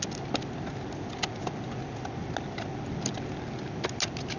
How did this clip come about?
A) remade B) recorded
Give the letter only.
B